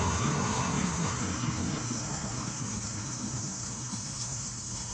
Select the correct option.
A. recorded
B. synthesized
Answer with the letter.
B